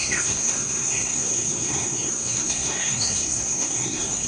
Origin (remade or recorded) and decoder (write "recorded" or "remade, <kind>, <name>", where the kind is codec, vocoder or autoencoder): remade, codec, SNAC